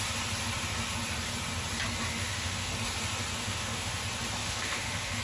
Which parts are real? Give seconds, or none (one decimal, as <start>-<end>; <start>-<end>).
0.0-2.1; 2.7-3.4; 4.0-4.4

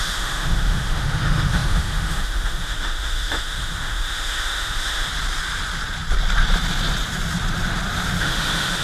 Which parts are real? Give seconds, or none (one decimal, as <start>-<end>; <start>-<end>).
5.1-8.2

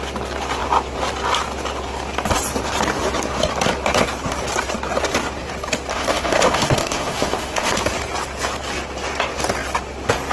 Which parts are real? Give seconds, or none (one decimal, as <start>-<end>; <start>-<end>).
0.0-5.9; 7.7-10.3

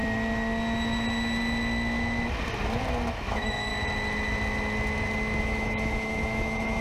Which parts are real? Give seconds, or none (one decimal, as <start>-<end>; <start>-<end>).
0.0-3.1; 3.7-5.4

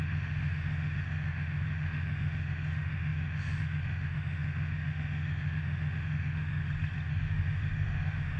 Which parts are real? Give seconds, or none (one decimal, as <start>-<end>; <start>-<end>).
6.6-7.1